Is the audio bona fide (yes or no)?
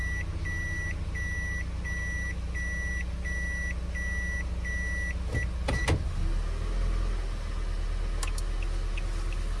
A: yes